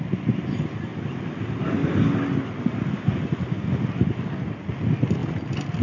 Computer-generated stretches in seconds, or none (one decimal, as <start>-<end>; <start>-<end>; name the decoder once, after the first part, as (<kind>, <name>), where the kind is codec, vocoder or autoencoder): none